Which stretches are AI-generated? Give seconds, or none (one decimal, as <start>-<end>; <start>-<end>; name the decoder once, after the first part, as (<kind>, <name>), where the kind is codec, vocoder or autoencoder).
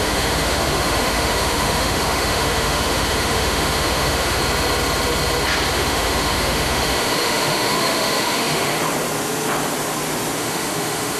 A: 0.0-4.4 (autoencoder, DAC-VAE); 5.7-8.7; 10.4-11.2